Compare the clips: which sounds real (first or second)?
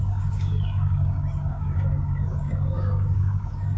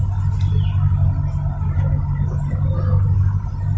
second